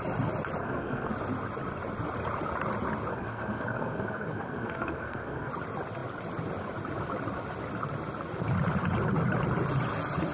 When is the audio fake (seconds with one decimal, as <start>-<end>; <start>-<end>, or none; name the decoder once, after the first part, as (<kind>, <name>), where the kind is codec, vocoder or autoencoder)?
0.6-1.1 (codec, SNAC); 3.1-5.5